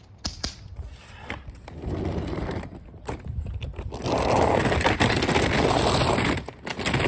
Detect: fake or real real